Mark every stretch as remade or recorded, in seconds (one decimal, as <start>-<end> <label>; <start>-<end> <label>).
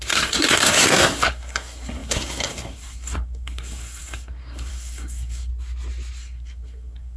0.0-5.5 remade; 5.5-6.2 recorded; 6.2-7.2 remade